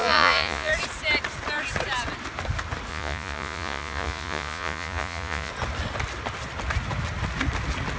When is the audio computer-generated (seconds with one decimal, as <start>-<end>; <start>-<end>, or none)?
0.0-0.7; 2.9-5.5